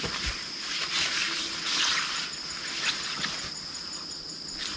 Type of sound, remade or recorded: recorded